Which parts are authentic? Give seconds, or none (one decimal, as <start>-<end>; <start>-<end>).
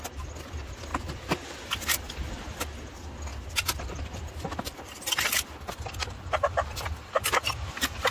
0.0-3.3; 7.3-8.1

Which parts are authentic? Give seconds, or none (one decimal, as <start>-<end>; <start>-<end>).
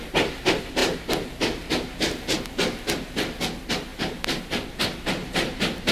0.0-3.9; 4.4-5.2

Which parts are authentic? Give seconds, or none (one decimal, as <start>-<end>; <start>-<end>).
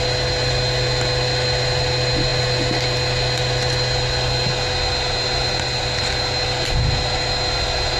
0.0-8.0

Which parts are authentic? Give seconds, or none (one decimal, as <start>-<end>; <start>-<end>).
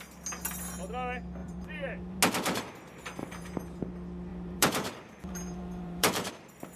0.0-1.4; 2.2-3.2; 3.9-4.3; 6.3-6.8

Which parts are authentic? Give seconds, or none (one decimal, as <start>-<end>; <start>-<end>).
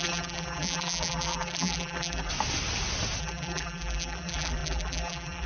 2.3-3.2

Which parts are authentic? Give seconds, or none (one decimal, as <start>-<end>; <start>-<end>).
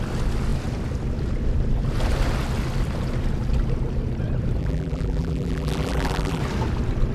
0.0-4.6; 6.4-7.1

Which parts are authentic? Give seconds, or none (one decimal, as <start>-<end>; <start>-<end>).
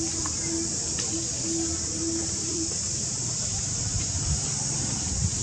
0.0-1.7; 4.9-5.4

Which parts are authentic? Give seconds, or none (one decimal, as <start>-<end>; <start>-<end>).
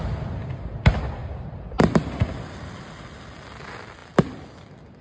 0.0-1.2; 2.5-5.0